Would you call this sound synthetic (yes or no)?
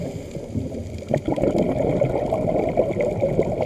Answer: no